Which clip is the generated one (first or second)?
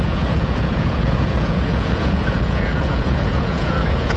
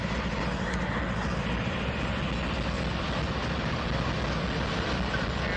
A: first